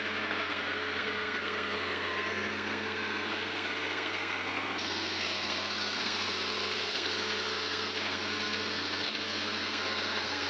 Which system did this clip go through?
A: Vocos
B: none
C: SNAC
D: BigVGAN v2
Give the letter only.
C